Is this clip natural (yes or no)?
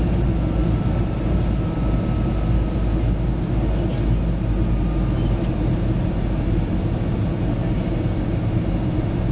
yes